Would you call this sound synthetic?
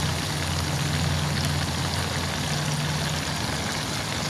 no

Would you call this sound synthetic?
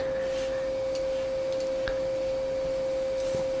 no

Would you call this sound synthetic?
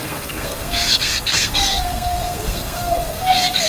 yes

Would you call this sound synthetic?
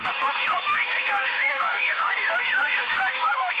yes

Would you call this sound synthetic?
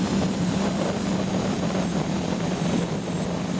no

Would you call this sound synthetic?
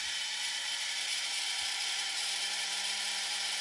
yes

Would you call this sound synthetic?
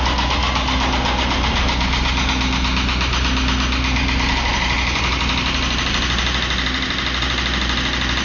no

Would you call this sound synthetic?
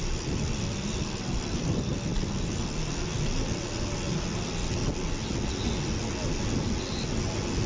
no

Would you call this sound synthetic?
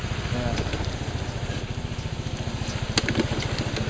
no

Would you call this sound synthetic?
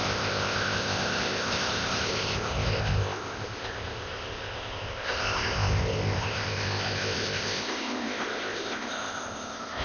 yes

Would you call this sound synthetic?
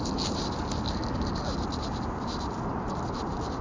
no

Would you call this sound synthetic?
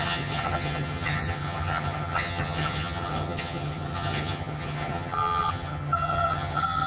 yes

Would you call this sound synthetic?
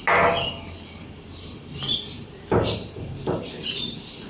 no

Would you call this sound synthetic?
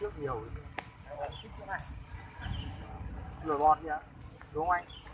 no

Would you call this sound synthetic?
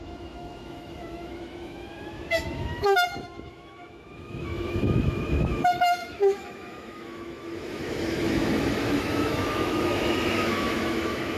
yes